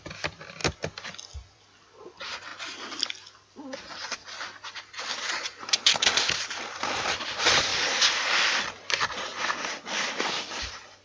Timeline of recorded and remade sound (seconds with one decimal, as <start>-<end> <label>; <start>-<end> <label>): 0.0-0.6 remade; 0.6-1.5 recorded; 1.5-2.5 remade; 2.5-5.4 recorded; 5.4-7.7 remade; 7.7-8.6 recorded; 8.6-11.0 remade